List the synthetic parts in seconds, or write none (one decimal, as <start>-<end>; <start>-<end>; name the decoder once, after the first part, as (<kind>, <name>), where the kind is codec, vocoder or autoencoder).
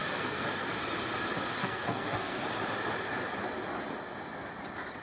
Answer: 0.0-0.7 (codec, SNAC); 1.6-2.4